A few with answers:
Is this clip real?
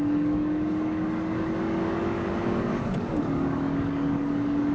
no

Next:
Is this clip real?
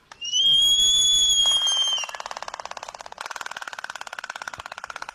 yes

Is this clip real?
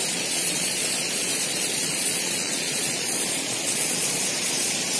no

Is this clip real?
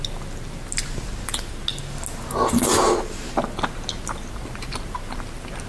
yes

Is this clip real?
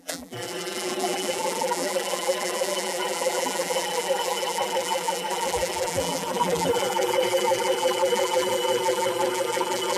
no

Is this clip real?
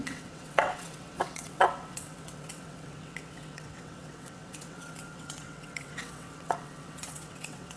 no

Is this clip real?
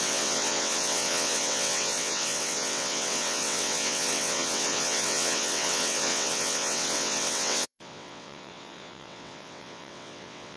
no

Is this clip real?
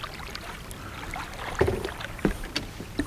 yes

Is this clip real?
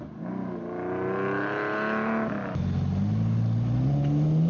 yes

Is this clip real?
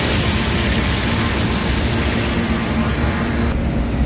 yes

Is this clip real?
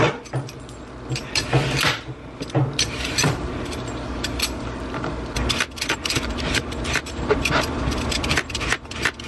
no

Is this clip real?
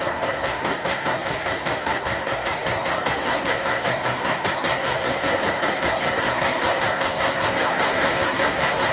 no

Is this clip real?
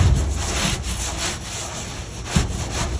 yes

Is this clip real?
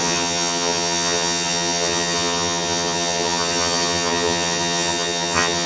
no